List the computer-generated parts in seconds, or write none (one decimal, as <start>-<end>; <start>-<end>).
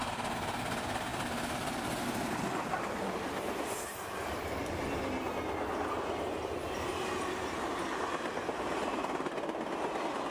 none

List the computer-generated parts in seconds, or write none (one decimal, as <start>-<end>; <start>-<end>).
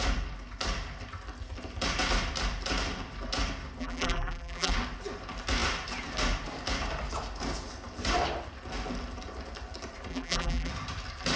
3.8-4.7; 10.1-10.7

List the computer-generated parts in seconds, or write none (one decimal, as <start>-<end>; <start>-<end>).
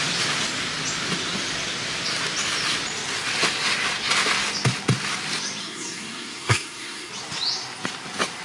5.6-7.1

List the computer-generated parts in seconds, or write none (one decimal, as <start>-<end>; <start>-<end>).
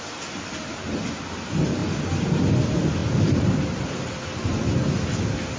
none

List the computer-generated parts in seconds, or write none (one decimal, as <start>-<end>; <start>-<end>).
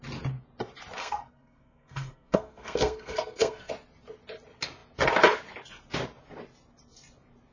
1.0-3.7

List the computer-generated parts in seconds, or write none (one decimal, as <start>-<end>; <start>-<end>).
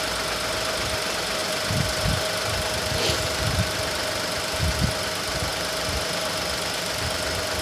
1.4-4.7; 5.5-7.6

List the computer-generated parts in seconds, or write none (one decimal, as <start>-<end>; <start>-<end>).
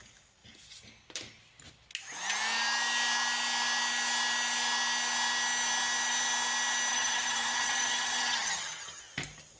6.9-9.0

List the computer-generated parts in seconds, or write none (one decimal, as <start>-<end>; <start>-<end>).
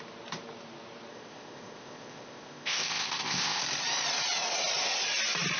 1.1-3.6